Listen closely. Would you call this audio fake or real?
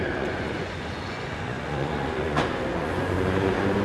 fake